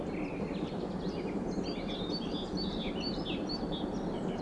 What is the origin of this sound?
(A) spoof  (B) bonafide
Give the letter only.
B